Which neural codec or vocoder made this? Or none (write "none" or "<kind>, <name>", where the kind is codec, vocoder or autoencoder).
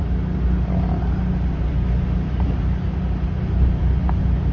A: none